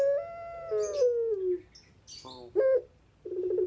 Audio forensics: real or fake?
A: real